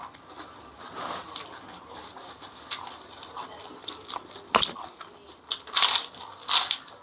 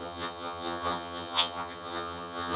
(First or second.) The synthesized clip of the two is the second